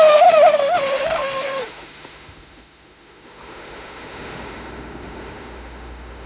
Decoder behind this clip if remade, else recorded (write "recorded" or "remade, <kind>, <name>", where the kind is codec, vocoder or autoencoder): remade, autoencoder, DAC-VAE